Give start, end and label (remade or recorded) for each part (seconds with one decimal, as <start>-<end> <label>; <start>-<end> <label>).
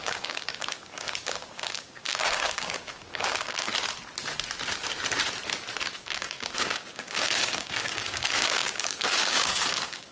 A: 0.0-3.7 remade; 3.7-5.9 recorded; 5.9-10.1 remade